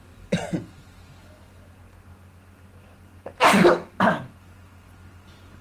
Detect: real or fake real